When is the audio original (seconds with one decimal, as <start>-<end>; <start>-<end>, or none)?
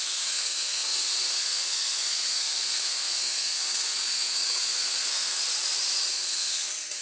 5.4-6.1